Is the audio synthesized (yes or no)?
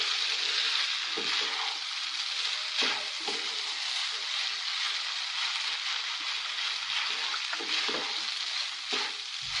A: no